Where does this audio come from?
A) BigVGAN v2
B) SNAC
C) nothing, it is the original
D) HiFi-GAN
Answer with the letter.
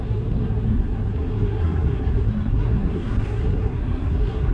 B